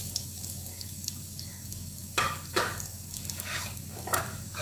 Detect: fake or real fake